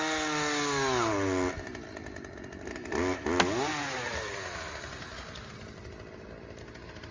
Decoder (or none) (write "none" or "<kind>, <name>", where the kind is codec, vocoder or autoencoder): none